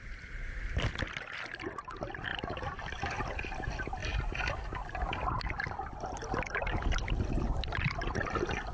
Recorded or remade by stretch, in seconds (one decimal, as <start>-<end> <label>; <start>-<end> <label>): 0.0-8.7 recorded